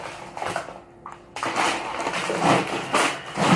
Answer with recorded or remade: recorded